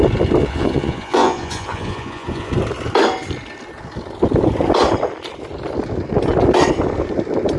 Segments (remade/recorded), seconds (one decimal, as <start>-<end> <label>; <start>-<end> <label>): 0.0-0.4 recorded; 0.4-2.5 remade; 2.5-7.6 recorded